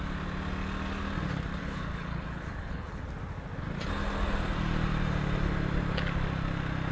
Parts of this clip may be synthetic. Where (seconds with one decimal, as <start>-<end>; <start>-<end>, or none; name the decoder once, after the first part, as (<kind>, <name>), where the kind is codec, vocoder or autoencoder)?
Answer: 1.6-3.0 (codec, HILCodec)